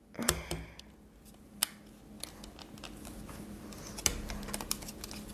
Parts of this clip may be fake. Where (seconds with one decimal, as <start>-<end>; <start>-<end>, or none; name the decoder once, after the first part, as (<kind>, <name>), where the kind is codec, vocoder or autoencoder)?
none